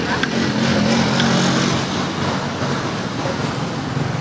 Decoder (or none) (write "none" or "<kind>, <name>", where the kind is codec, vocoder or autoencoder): none